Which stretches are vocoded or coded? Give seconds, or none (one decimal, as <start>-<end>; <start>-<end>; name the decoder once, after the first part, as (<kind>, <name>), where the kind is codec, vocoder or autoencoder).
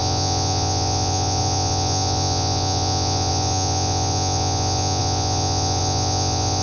0.0-6.6 (vocoder, Vocos)